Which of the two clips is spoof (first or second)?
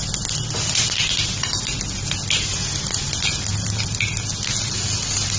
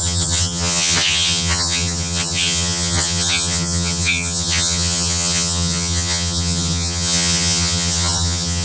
second